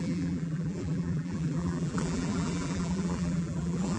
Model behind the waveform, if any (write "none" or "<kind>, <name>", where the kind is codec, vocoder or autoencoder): vocoder, BigVGAN v2